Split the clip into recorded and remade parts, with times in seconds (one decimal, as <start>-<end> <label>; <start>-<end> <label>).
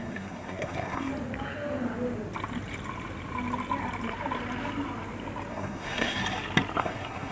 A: 0.0-1.1 remade; 1.1-5.5 recorded; 5.5-6.2 remade; 6.2-6.8 recorded; 6.8-7.3 remade